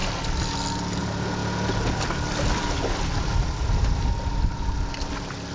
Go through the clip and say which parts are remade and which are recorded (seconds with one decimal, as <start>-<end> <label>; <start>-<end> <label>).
0.0-5.5 recorded